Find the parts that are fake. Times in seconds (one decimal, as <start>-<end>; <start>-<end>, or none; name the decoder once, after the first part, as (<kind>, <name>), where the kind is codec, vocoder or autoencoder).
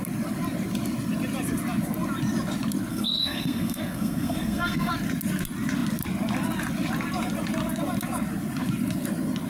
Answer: 2.9-4.9 (codec, SNAC)